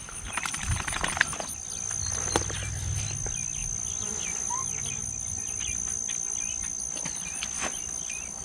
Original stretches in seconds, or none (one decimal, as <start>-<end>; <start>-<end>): 0.0-8.4